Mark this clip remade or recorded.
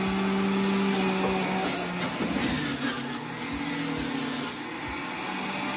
recorded